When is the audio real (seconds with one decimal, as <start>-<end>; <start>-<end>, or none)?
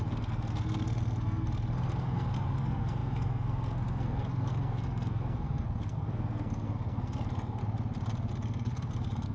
7.6-8.3